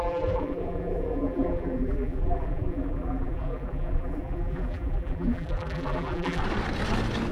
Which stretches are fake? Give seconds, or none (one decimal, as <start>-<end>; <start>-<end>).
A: 0.0-6.4